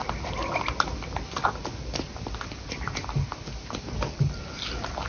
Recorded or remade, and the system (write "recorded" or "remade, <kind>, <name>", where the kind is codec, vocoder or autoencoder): recorded